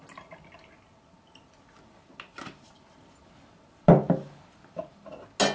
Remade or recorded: recorded